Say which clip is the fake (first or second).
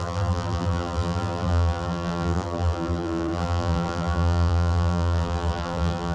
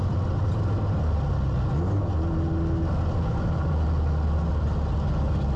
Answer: first